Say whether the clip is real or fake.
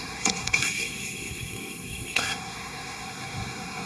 fake